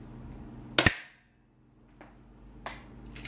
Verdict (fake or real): real